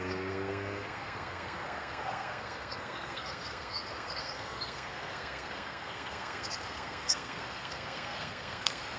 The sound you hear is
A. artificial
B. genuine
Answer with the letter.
A